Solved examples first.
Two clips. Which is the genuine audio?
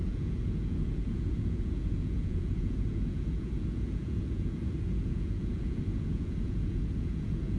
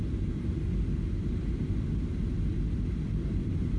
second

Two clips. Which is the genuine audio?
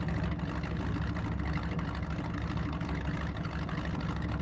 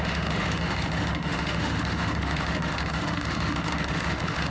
first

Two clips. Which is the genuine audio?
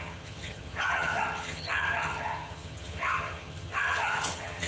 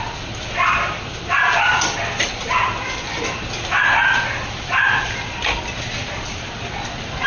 second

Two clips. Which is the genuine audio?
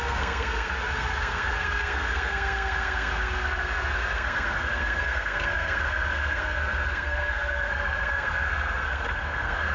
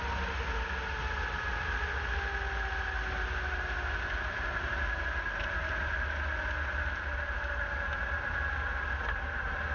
second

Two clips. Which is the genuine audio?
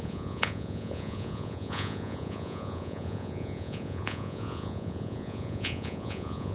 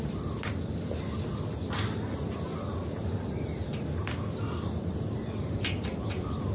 second